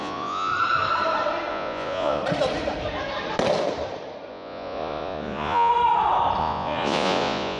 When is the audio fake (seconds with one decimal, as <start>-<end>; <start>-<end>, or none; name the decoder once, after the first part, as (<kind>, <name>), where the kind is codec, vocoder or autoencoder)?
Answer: 0.0-0.5 (vocoder, Vocos); 1.5-2.2; 4.3-5.7; 6.4-7.6